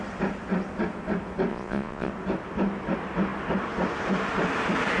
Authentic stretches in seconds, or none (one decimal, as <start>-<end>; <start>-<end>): 0.0-1.5; 2.1-5.0